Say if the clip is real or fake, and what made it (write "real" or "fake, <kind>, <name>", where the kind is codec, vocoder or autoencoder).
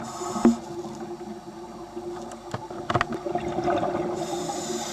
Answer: real